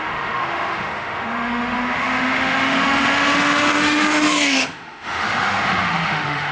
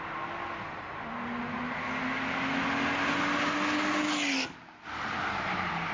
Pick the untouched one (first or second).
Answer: second